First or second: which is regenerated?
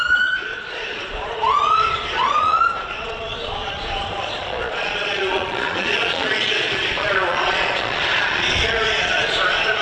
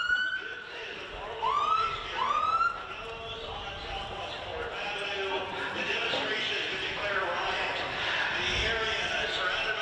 first